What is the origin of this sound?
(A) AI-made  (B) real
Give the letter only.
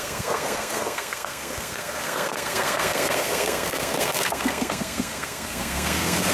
A